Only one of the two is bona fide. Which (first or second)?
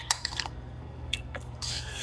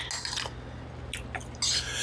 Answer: second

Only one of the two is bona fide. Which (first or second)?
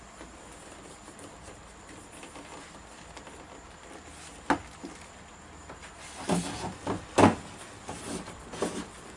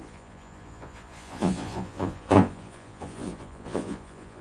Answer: first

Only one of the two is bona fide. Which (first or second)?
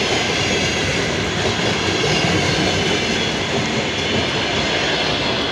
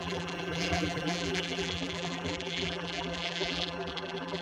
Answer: first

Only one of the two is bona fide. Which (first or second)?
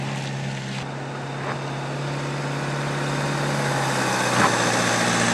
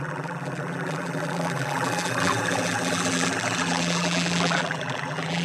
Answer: first